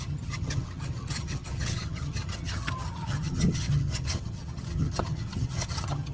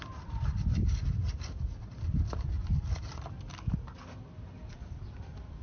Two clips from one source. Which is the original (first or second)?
second